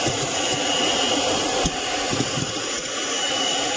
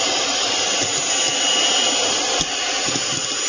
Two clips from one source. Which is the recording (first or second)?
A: second